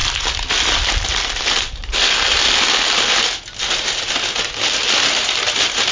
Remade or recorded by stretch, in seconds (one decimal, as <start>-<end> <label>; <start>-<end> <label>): 0.0-1.4 recorded; 1.4-1.9 remade; 1.9-5.4 recorded; 5.4-5.9 remade